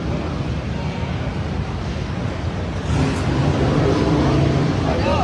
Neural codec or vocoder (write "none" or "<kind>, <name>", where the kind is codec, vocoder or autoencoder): none